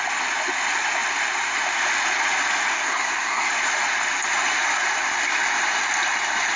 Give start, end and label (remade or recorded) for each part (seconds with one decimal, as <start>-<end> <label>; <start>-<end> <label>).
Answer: 0.0-2.7 recorded; 2.7-3.5 remade; 3.5-6.6 recorded